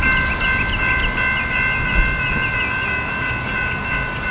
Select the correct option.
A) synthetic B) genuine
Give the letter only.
B